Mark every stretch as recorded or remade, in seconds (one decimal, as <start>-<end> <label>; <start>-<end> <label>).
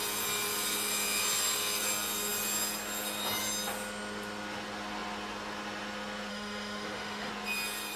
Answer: 0.0-6.3 recorded; 6.3-7.3 remade; 7.3-8.0 recorded